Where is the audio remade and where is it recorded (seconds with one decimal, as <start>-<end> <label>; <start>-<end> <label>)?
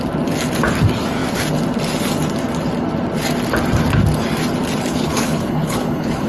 0.0-4.9 recorded; 4.9-6.3 remade